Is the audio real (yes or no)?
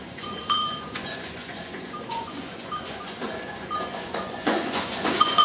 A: no